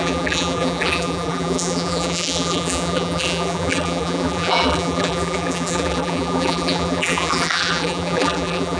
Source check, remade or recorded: remade